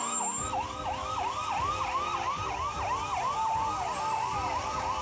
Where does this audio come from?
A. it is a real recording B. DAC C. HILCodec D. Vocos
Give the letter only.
A